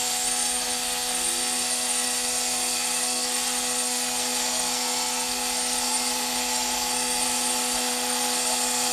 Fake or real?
fake